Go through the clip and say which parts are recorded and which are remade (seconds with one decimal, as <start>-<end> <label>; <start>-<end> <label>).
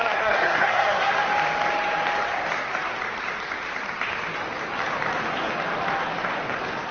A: 0.0-1.1 remade; 1.1-6.9 recorded